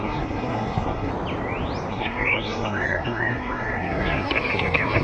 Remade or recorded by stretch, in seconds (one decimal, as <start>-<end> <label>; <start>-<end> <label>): 0.0-1.1 remade; 1.1-1.9 recorded; 1.9-5.0 remade